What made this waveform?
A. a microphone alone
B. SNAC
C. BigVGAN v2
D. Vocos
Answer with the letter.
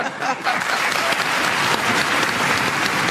A